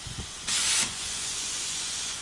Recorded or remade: remade